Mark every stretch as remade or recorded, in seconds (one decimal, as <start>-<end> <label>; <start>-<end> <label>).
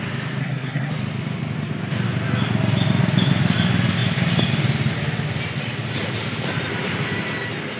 0.0-0.4 recorded; 0.4-0.9 remade; 0.9-7.8 recorded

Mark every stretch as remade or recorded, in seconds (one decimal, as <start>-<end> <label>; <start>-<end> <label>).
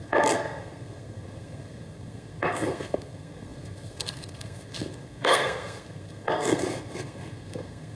0.0-8.0 remade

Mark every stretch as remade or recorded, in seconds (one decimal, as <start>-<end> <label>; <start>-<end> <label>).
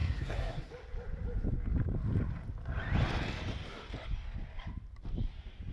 0.0-0.7 remade; 0.7-5.7 recorded